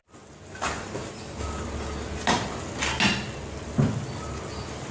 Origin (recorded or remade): recorded